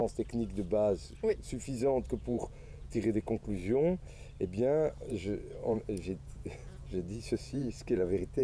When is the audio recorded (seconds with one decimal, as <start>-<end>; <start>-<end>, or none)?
0.0-1.3; 3.6-5.1